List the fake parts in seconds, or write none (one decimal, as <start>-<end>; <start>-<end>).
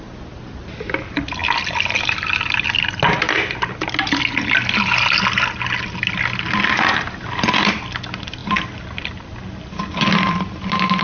none